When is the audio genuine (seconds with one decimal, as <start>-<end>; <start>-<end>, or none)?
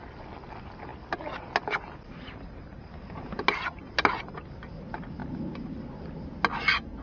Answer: 0.0-7.0